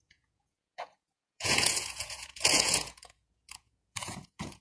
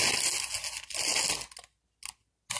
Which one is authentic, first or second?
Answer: second